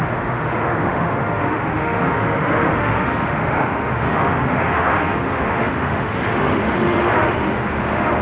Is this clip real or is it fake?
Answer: fake